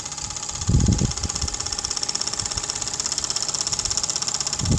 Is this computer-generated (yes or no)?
no